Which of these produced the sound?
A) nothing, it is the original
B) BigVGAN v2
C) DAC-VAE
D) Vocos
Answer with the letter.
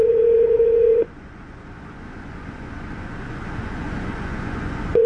D